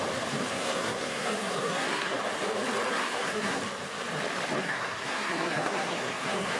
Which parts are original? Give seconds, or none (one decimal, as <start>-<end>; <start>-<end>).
0.0-0.5; 2.2-2.9; 3.6-4.6